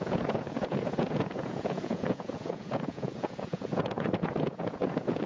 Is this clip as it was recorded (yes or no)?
no